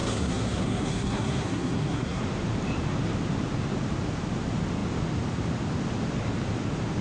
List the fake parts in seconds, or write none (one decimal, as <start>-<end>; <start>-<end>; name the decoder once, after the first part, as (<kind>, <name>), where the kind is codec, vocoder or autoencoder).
0.0-2.2 (codec, SNAC)

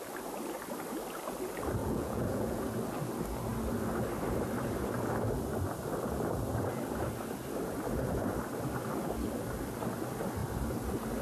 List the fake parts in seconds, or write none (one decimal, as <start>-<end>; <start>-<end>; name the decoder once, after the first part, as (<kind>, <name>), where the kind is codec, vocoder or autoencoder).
1.8-2.6 (vocoder, Vocos)

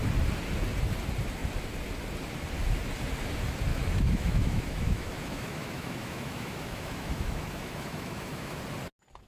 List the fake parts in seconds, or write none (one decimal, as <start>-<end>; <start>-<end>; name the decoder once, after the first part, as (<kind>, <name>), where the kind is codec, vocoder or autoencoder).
3.7-8.6 (autoencoder, DAC-VAE)

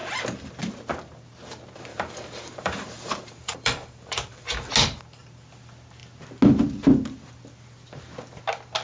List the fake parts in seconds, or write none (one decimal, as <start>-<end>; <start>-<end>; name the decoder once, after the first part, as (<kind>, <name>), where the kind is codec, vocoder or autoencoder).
1.9-4.7 (vocoder, BigVGAN v2)